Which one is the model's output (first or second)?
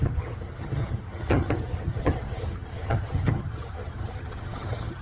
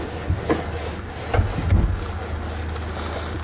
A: first